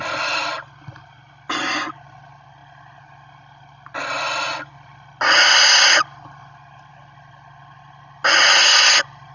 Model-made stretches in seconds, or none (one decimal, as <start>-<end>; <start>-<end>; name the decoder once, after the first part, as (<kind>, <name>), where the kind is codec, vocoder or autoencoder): none